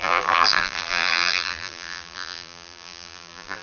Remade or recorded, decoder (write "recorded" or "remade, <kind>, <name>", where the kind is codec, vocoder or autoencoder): remade, vocoder, BigVGAN v2